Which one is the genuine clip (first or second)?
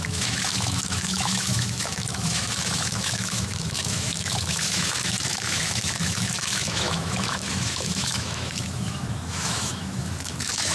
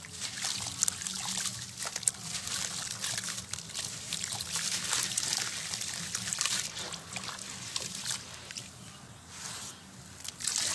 second